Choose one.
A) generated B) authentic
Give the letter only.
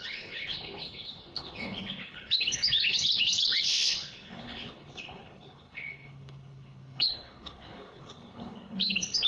A